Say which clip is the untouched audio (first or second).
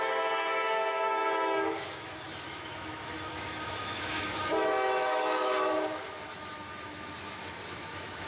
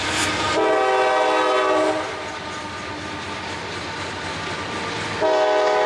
second